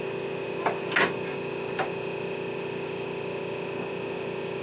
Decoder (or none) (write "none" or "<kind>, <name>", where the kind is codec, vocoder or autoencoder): none